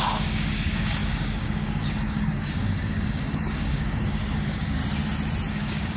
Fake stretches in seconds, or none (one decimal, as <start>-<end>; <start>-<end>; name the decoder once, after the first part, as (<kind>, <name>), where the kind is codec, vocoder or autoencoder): 0.0-4.8 (codec, DAC); 5.5-6.0